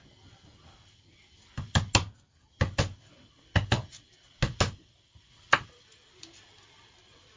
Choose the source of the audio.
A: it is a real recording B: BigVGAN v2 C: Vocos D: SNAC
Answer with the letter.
A